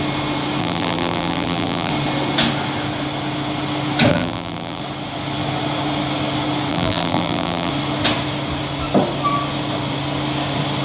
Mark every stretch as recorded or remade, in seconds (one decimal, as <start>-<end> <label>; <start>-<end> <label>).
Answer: 0.0-0.6 recorded; 0.6-1.9 remade; 1.9-4.1 recorded; 4.1-4.8 remade; 4.8-6.7 recorded; 6.7-7.7 remade; 7.7-10.8 recorded